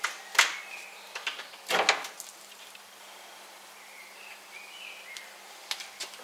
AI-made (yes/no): no